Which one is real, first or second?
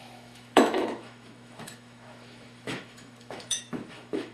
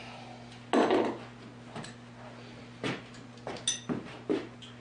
second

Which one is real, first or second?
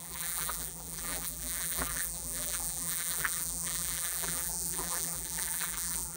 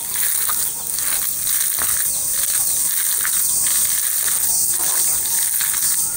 second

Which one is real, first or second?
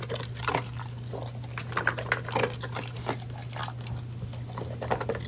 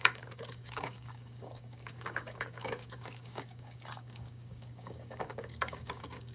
first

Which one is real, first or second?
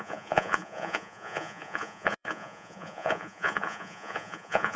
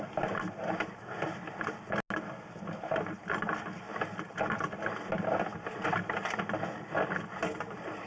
second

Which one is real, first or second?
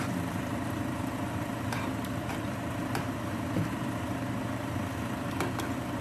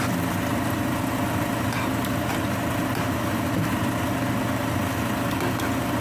second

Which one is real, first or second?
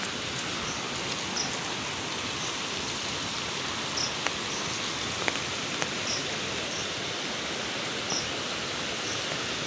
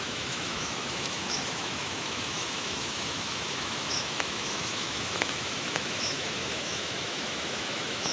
first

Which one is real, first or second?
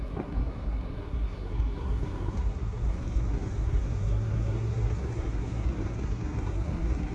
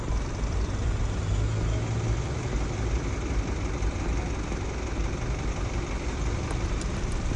second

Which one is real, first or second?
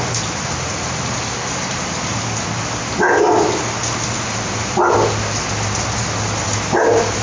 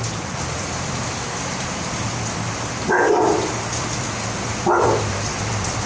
first